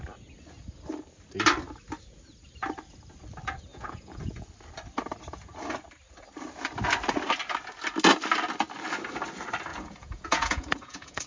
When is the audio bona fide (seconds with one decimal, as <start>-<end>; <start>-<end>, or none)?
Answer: 0.0-3.7; 4.5-9.7